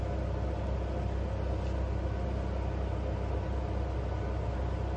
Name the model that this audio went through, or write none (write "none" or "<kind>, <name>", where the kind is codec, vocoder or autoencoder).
none